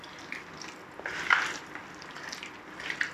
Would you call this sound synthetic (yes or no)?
no